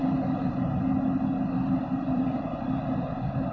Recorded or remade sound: recorded